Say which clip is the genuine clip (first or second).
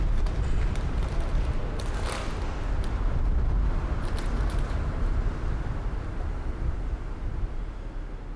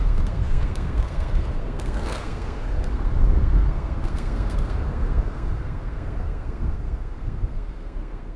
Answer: first